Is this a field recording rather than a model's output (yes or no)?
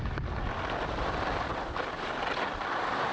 yes